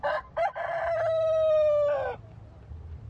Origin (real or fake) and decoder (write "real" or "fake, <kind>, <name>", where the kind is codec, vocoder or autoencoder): real